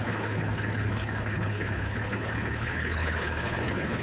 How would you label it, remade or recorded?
remade